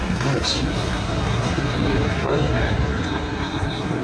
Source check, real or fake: fake